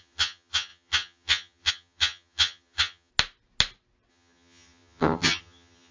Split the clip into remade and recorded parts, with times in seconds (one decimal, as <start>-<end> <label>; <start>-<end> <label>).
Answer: 0.0-3.1 remade; 3.1-4.1 recorded; 4.1-5.9 remade